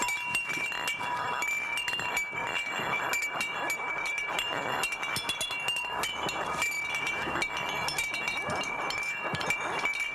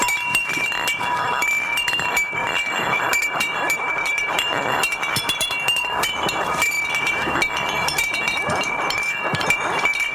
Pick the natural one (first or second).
first